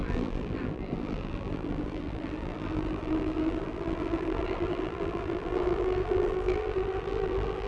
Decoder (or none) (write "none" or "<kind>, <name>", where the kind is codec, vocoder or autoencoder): vocoder, BigVGAN v2